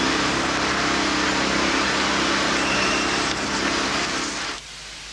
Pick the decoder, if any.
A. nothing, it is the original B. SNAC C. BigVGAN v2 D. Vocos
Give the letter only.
A